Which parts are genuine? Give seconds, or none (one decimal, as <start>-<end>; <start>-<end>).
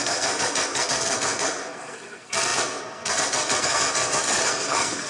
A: none